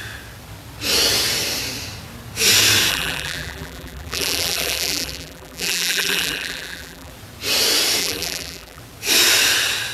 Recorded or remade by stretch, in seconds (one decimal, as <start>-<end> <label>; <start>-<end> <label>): 0.0-2.9 recorded; 2.9-7.1 remade; 7.1-8.0 recorded; 8.0-8.8 remade; 8.8-9.9 recorded

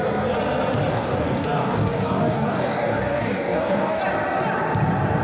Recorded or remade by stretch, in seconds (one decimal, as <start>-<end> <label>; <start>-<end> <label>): 0.0-0.9 recorded; 0.9-4.0 remade; 4.0-5.2 recorded

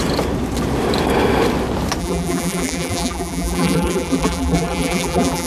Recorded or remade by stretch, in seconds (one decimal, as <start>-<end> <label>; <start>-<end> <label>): 0.0-2.0 recorded; 2.0-5.5 remade

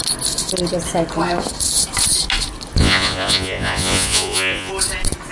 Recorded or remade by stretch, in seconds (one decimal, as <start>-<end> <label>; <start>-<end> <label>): 0.0-2.8 recorded; 2.8-4.7 remade; 4.7-5.3 recorded

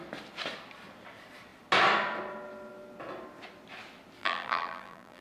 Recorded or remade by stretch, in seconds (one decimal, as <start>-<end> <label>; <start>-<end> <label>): 0.0-4.2 recorded; 4.2-5.2 remade

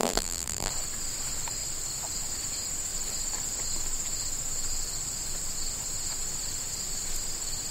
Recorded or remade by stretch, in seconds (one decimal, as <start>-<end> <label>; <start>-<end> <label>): 0.0-0.7 remade; 0.7-7.7 recorded